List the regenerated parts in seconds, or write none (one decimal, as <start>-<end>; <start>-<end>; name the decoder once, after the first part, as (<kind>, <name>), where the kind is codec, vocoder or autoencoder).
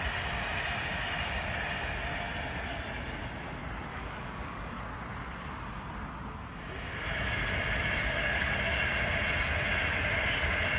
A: 3.9-4.8 (codec, DAC); 8.0-8.8